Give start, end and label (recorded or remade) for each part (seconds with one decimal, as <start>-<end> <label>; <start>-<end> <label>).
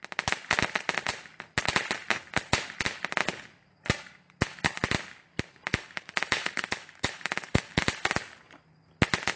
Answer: 0.0-5.7 recorded; 5.7-7.8 remade; 7.8-9.4 recorded